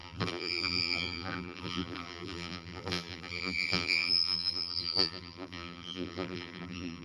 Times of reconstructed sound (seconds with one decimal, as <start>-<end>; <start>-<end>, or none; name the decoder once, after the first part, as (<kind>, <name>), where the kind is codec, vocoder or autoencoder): 0.0-7.0 (vocoder, BigVGAN v2)